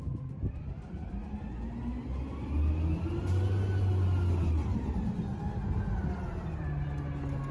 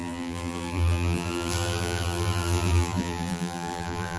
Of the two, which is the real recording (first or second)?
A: first